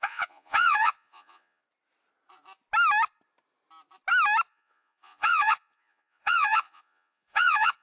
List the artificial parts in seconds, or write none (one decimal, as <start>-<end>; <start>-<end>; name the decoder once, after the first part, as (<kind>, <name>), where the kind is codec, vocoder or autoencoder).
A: 0.0-1.6 (vocoder, Vocos); 4.5-7.8